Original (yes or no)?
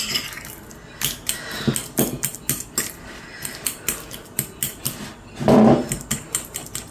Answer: yes